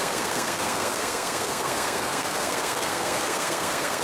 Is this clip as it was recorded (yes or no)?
no